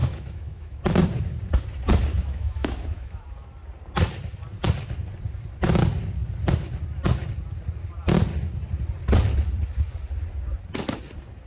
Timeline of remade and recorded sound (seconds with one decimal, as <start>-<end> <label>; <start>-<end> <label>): 0.0-0.8 remade; 0.8-2.1 recorded; 2.1-3.2 remade; 3.2-11.5 recorded